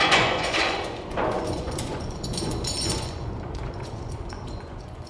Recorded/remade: remade